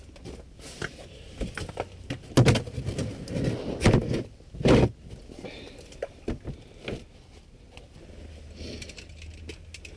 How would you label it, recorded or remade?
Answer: recorded